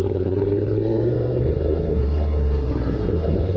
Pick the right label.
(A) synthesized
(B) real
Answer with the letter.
A